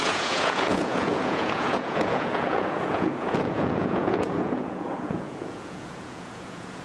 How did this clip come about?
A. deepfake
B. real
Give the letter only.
A